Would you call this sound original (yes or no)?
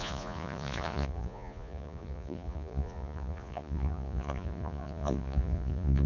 no